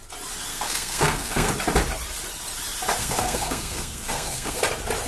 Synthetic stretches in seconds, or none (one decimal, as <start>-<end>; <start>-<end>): 0.5-1.5; 3.0-4.6